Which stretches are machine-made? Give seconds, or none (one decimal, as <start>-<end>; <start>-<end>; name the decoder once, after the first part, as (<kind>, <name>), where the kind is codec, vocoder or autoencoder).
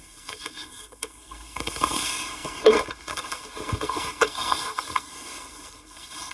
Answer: 0.0-6.3 (codec, SNAC)